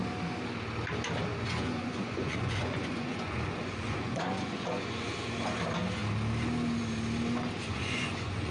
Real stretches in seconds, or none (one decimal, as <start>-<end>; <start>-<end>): 0.0-1.3; 5.0-7.7